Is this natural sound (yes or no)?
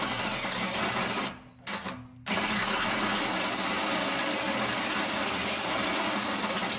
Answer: yes